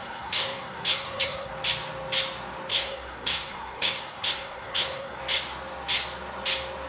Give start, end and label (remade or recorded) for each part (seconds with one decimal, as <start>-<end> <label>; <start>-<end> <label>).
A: 0.0-1.5 remade; 1.5-2.7 recorded; 2.7-5.2 remade; 5.2-6.9 recorded